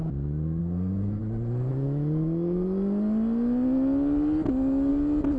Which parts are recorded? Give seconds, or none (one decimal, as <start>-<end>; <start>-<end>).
0.0-0.6; 1.2-5.4